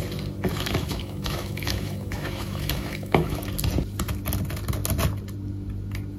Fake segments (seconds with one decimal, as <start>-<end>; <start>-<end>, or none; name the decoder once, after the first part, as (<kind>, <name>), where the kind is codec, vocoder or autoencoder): 0.5-3.4 (autoencoder, DAC-VAE)